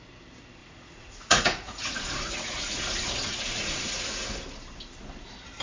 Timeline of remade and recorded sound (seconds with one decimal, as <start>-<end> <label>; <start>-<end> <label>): 0.0-0.6 recorded; 0.6-4.0 remade; 4.0-5.6 recorded